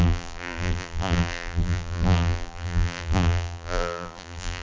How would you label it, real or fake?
fake